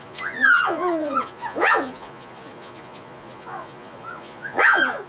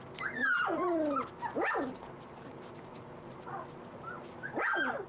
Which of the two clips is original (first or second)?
second